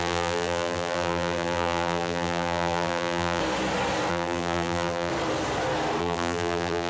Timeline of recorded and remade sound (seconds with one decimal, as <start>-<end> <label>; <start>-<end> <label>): 0.0-3.4 remade; 3.4-4.1 recorded; 4.1-5.1 remade; 5.1-6.0 recorded; 6.0-6.9 remade